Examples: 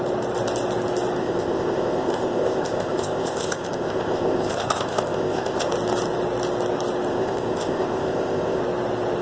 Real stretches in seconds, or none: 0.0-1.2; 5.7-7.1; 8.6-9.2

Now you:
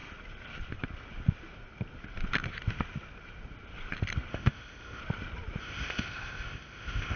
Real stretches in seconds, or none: 0.0-4.3; 5.0-5.6

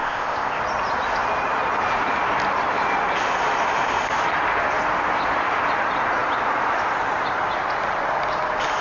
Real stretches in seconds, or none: 0.6-8.8

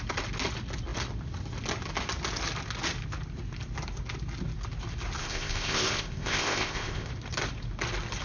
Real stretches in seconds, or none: 0.0-5.2; 7.1-8.2

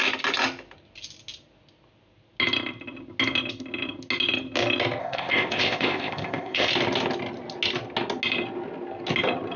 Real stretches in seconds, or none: 0.0-5.0; 6.7-9.6

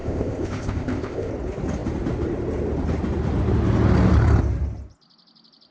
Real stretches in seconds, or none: 1.3-5.7

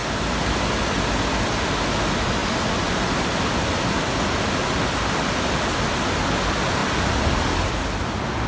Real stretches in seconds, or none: 0.0-8.5

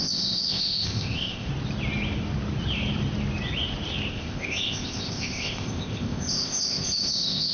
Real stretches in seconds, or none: 1.5-4.1